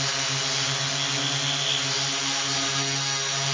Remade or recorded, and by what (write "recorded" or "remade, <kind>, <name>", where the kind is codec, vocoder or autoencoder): recorded